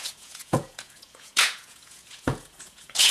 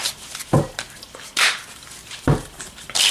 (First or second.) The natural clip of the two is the second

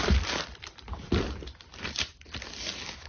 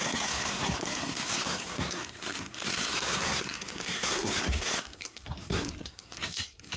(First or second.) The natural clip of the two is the first